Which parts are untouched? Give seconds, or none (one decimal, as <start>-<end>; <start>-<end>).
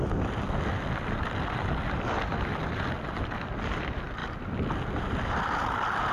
0.0-6.1